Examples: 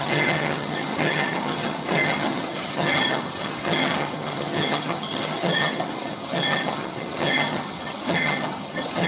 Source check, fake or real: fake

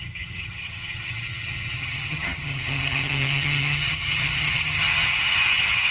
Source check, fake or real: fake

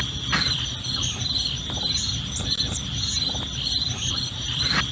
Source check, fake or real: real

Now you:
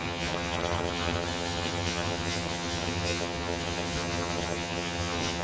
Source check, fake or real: fake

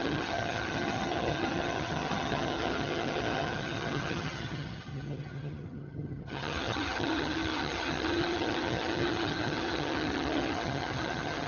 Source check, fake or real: fake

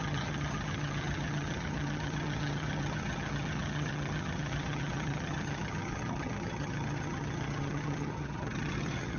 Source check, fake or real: fake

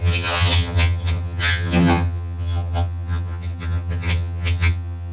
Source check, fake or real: fake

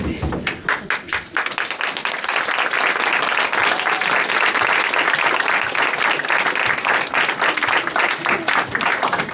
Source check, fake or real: real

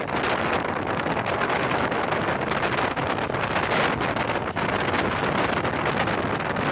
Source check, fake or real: real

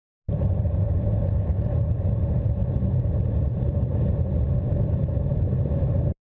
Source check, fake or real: real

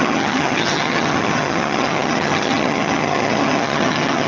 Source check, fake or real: fake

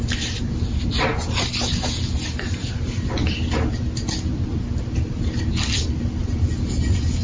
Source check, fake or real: real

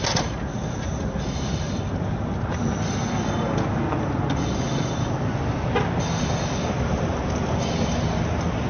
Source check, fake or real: real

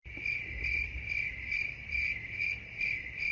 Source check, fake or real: real